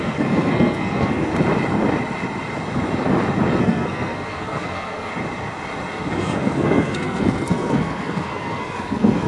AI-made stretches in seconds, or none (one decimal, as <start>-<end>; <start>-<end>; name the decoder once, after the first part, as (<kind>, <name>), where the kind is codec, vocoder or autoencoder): 0.0-1.3 (codec, SNAC); 3.6-5.1; 6.1-9.3